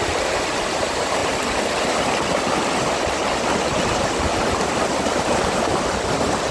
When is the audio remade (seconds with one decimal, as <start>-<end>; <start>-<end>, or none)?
0.0-1.2; 5.1-5.7